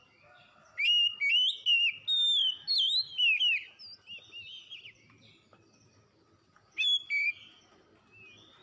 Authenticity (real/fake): real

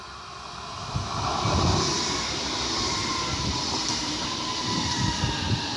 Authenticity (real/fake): real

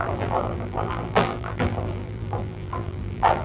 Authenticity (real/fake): fake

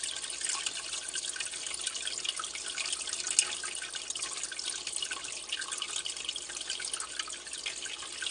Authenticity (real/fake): real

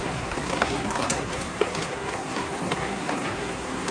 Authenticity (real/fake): fake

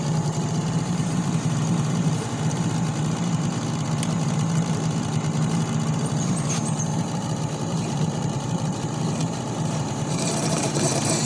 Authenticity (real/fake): fake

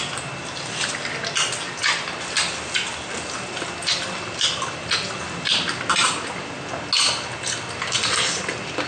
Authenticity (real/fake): real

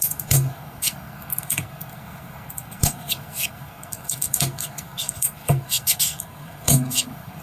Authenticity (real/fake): fake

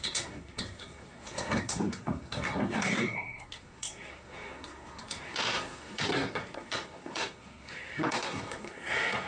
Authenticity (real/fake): fake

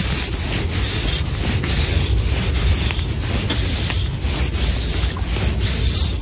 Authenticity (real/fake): real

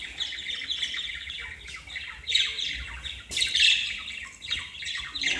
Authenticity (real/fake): real